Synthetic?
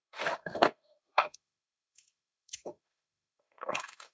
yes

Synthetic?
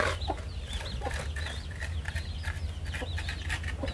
no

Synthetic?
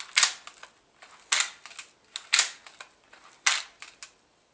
no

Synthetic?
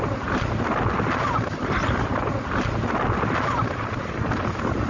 no